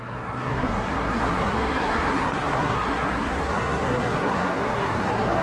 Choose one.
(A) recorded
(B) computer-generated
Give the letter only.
B